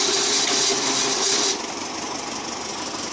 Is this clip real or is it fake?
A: real